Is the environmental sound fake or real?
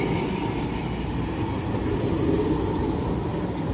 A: real